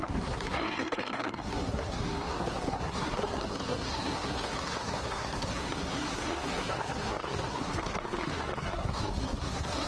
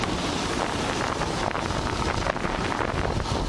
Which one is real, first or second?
second